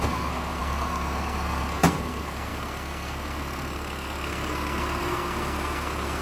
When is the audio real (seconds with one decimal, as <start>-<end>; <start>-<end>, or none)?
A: none